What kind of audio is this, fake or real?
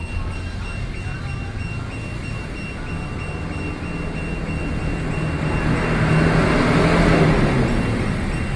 real